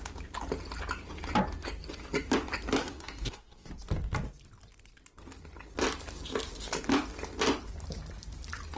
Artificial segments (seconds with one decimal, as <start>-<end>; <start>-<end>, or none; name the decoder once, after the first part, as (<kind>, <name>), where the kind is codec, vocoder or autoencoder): 2.8-3.7 (codec, SNAC)